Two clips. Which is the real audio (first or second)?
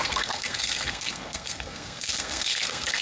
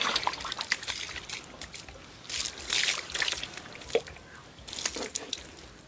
second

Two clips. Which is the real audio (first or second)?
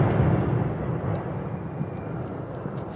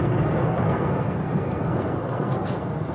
first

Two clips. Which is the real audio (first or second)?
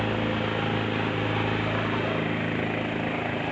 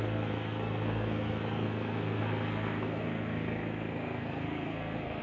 first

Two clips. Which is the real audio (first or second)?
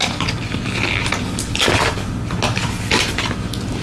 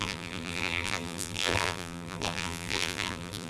first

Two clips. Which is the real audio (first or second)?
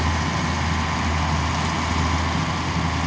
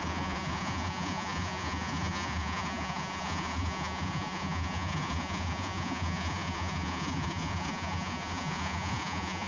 first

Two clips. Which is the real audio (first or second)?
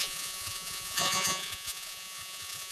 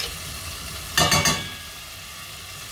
second